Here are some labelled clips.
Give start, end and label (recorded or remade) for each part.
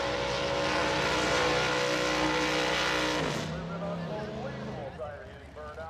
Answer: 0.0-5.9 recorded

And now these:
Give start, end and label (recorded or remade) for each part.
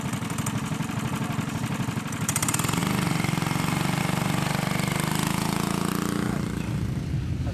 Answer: 0.0-5.2 recorded; 5.2-5.9 remade; 5.9-7.5 recorded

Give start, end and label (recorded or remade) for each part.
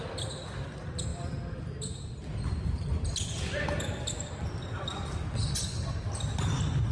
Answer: 0.0-1.1 recorded; 1.1-5.2 remade; 5.2-6.9 recorded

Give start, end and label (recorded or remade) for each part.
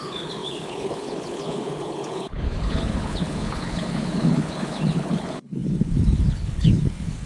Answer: 0.0-7.3 remade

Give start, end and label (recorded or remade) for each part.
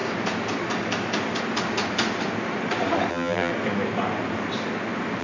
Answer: 0.0-3.1 recorded; 3.1-3.5 remade; 3.5-5.2 recorded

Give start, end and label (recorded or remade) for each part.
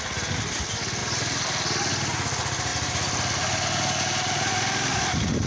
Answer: 0.0-5.5 recorded